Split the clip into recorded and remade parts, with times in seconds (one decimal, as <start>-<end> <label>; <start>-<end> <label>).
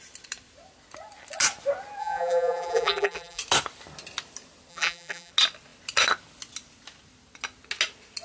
0.0-2.0 recorded; 2.0-3.4 remade; 3.4-4.7 recorded; 4.7-5.3 remade; 5.3-8.2 recorded